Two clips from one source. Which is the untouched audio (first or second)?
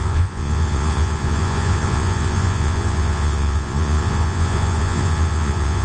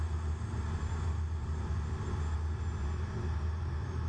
second